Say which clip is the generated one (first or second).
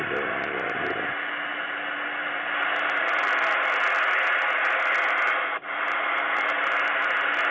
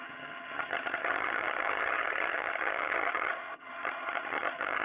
second